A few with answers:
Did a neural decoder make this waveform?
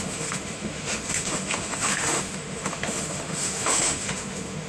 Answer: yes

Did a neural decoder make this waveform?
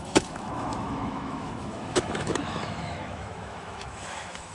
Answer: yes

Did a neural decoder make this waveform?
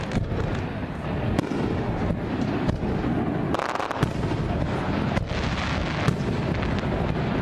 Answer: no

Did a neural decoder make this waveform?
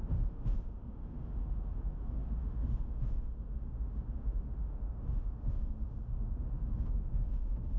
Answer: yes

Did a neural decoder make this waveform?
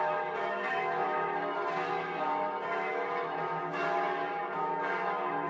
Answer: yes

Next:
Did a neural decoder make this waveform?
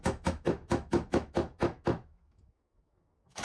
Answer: yes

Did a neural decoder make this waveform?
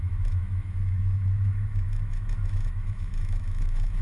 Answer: yes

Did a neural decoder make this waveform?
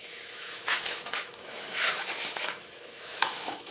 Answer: yes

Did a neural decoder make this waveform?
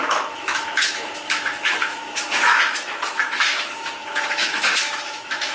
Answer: yes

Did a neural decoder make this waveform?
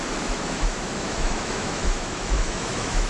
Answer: yes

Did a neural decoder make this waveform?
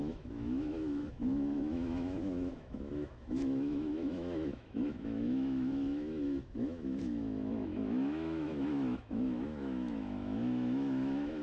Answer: yes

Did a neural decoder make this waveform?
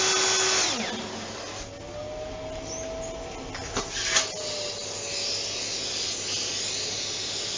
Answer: no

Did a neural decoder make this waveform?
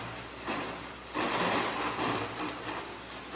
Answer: no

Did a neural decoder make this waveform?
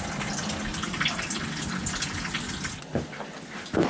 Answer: no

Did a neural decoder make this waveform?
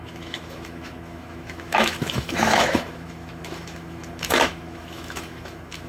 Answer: yes